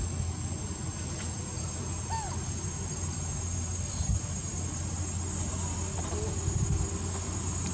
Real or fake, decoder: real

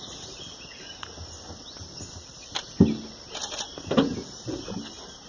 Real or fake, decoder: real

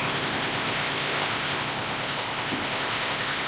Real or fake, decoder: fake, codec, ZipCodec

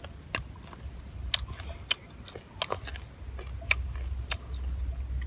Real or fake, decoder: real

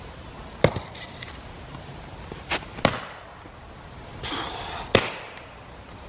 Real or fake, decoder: real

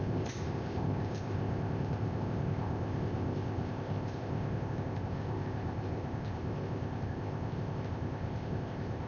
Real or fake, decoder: fake, codec, ZipCodec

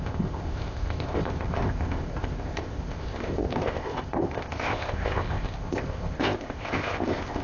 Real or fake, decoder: fake, codec, ZipCodec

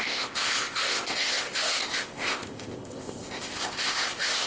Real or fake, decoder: fake, codec, ZipCodec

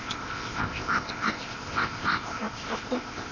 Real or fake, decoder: fake, codec, ZipCodec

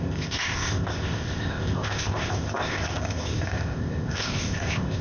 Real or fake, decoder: fake, codec, ZipCodec